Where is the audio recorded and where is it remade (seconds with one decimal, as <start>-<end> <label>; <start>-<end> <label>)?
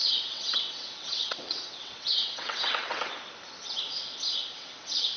0.0-3.1 remade; 3.1-4.5 recorded; 4.5-5.2 remade